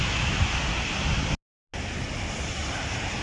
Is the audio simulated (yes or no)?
no